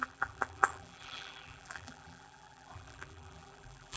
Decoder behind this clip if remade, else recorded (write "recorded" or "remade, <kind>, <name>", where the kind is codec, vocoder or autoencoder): remade, vocoder, BigVGAN v2